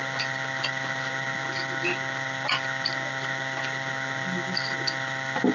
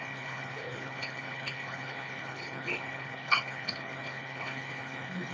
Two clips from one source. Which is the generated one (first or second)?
second